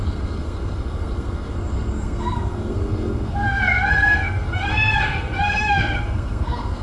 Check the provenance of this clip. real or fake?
fake